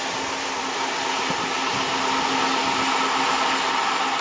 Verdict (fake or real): real